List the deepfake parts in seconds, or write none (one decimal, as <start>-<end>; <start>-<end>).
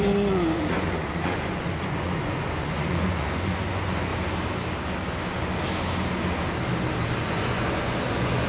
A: 0.0-4.1; 7.2-8.5